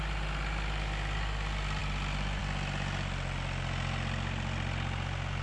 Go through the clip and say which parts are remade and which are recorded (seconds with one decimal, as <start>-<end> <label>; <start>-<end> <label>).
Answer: 0.0-5.4 recorded